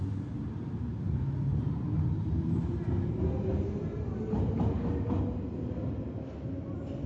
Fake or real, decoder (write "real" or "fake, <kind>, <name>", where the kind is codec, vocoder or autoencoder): real